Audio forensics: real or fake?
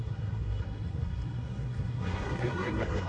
fake